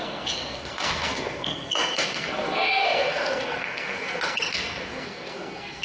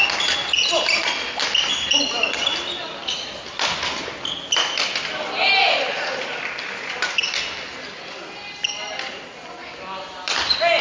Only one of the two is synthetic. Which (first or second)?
first